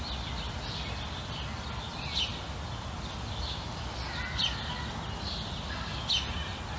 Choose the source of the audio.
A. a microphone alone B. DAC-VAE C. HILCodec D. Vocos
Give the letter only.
A